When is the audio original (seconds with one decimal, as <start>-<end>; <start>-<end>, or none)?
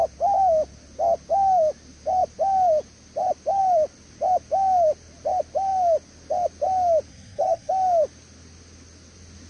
0.0-7.1; 7.7-9.5